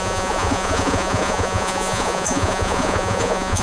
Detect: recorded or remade remade